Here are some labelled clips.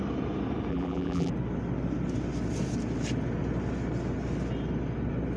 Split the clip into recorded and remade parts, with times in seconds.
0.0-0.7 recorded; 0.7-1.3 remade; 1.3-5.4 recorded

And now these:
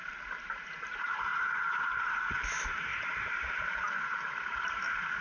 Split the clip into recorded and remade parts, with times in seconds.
0.0-5.2 remade

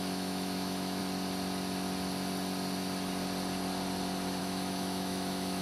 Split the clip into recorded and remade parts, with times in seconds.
0.0-1.0 remade; 1.0-4.4 recorded; 4.4-5.6 remade

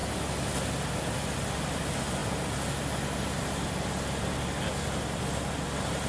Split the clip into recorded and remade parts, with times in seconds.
0.0-6.1 recorded